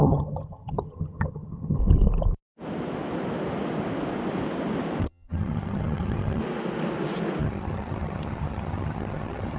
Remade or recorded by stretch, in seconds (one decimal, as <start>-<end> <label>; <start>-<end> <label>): 0.0-1.8 remade; 1.8-5.0 recorded; 5.0-6.4 remade; 6.4-7.4 recorded; 7.4-9.6 remade